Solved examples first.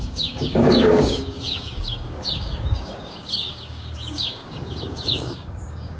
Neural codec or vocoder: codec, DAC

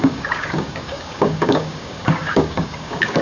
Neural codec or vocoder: codec, DAC